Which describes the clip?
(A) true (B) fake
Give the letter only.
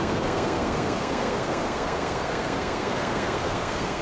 B